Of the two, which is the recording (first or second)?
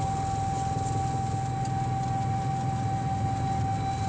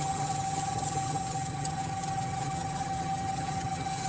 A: first